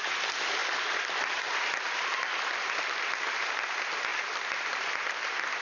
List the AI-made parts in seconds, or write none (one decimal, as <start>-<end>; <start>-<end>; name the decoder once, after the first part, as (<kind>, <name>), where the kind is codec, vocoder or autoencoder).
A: none